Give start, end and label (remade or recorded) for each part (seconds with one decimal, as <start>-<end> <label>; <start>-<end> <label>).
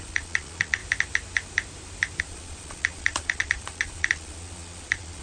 0.0-0.8 remade; 0.8-2.2 recorded; 2.2-5.2 remade